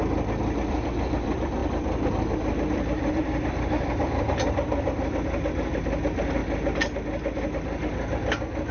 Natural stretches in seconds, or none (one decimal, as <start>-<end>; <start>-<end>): 0.0-0.7; 6.4-8.7